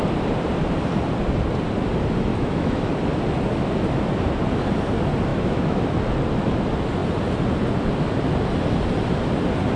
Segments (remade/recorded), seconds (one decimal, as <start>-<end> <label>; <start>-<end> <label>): 0.0-2.3 recorded; 2.3-2.9 remade; 2.9-5.3 recorded; 5.3-5.8 remade; 5.8-9.8 recorded